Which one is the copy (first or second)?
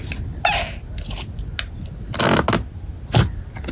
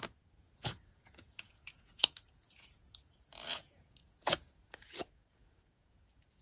second